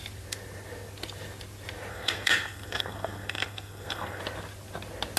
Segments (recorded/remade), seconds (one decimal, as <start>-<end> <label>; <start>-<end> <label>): 0.0-1.9 recorded; 1.9-4.2 remade; 4.2-5.2 recorded